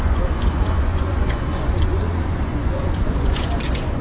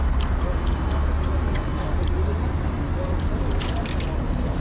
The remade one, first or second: first